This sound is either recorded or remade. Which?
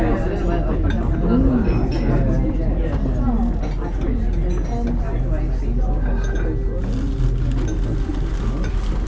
recorded